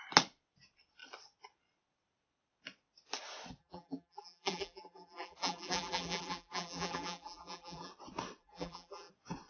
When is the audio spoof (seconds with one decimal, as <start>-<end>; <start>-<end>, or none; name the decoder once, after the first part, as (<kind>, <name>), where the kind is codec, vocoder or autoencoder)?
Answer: 3.6-7.9 (vocoder, BigVGAN v2); 8.4-9.1